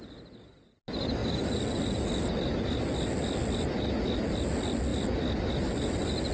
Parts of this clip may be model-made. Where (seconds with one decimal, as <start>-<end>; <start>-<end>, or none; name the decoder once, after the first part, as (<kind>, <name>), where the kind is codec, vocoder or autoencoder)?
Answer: none